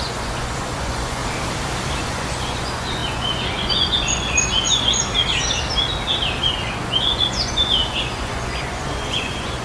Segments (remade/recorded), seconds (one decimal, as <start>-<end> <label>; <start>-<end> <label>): 0.0-1.2 remade; 1.2-2.0 recorded; 2.0-5.0 remade; 5.0-6.5 recorded; 6.5-9.6 remade